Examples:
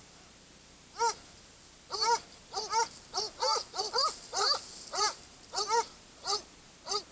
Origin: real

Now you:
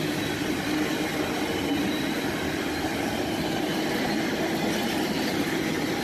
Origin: real